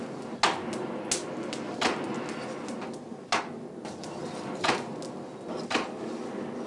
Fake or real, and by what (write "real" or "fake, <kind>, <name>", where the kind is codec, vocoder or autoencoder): real